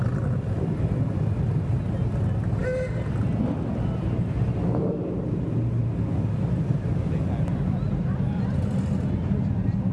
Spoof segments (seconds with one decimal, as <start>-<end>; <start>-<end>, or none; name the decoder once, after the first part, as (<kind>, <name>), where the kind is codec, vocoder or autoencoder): none